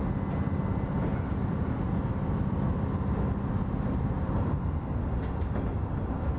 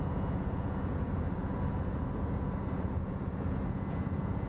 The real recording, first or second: first